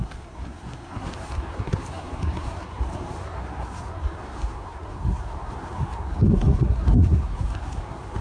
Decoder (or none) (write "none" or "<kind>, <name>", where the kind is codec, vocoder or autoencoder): codec, SNAC